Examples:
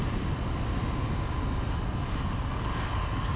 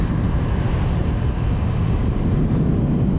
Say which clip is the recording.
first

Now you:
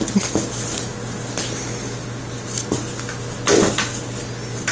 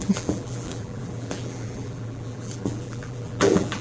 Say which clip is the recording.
first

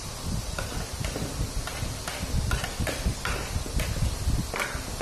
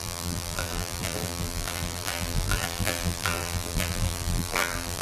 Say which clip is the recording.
first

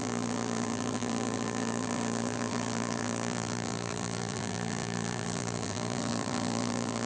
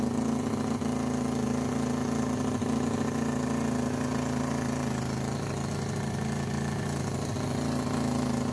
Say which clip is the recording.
second